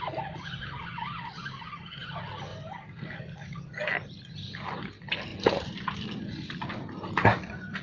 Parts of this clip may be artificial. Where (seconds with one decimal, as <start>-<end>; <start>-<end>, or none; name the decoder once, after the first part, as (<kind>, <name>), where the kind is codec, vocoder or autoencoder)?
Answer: 5.3-6.0 (vocoder, BigVGAN v2)